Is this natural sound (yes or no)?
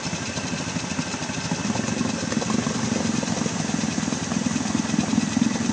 yes